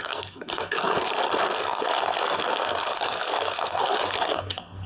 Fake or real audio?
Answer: fake